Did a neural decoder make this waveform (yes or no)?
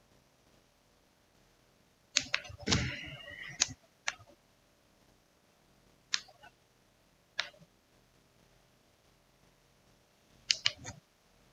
no